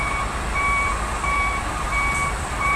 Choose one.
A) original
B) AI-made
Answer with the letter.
B